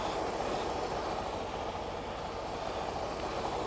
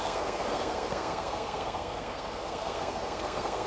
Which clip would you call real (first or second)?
first